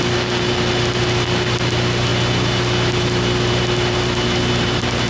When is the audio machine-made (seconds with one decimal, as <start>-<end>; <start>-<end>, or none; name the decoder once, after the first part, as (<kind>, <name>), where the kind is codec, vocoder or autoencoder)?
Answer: none